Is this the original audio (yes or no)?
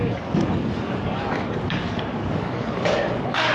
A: no